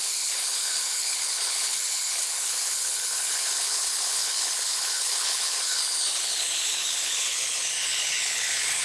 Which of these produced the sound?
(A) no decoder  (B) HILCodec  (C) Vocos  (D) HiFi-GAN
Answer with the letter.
B